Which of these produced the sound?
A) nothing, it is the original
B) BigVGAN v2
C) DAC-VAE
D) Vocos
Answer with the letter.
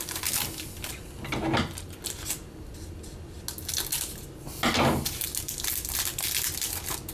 A